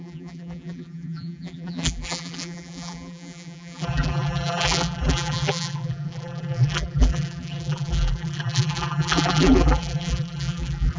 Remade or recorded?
remade